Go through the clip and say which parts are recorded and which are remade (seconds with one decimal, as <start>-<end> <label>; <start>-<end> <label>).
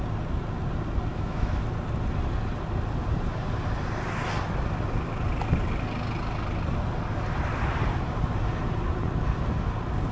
0.0-1.1 recorded; 1.1-1.6 remade; 1.6-10.1 recorded